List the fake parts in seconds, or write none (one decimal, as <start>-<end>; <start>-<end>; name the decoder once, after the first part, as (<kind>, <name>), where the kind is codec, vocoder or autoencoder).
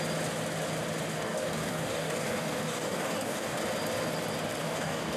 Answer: 1.1-3.6 (codec, DAC); 4.6-5.2